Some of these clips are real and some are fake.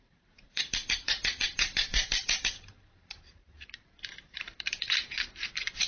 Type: fake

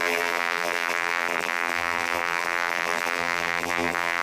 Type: fake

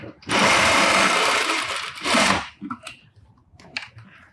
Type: fake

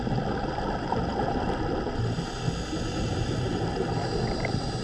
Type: real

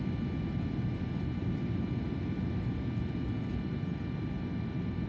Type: real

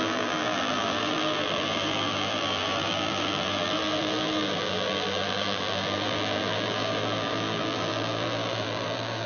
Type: fake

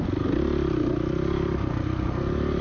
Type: real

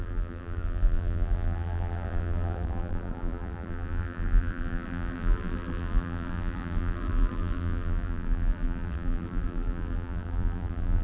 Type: fake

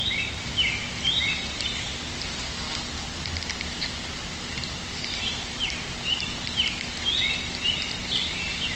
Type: fake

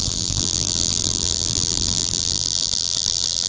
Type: fake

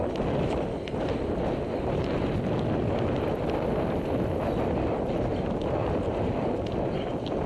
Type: real